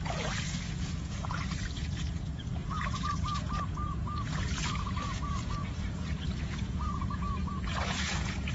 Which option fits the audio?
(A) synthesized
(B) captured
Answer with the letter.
A